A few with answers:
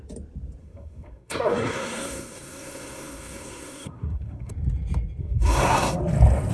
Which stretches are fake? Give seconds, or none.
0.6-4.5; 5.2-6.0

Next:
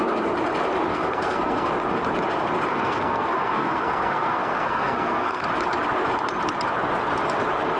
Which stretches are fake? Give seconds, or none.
0.9-1.7; 2.7-5.4

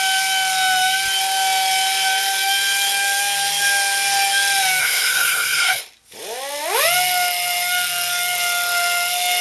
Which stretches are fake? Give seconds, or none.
4.8-5.8

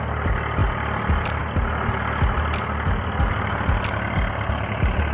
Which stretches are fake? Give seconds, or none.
none

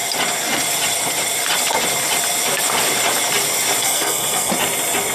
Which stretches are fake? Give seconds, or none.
3.8-4.5

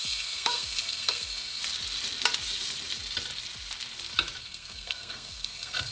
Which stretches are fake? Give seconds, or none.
0.0-1.6; 4.4-5.9